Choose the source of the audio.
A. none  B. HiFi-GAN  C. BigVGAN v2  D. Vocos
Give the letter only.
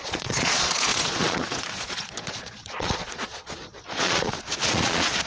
D